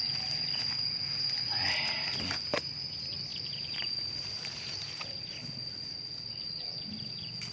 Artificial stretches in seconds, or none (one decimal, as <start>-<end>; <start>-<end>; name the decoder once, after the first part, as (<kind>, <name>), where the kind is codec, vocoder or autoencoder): 3.3-7.1 (vocoder, BigVGAN v2)